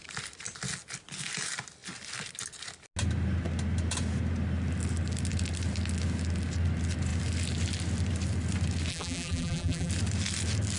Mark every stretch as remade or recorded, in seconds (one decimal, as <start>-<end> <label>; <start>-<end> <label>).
0.0-8.9 recorded; 8.9-9.9 remade; 9.9-10.8 recorded